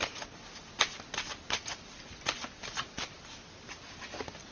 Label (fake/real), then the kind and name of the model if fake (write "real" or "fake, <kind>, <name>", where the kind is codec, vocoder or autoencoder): real